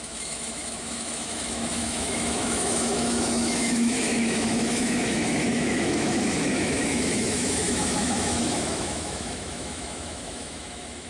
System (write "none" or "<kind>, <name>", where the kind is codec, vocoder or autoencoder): autoencoder, DAC-VAE